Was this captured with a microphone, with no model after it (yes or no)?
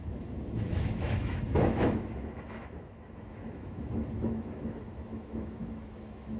no